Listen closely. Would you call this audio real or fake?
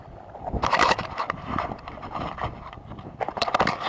fake